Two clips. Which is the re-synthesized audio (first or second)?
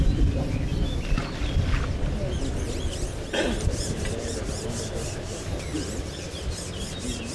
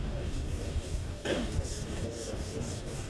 second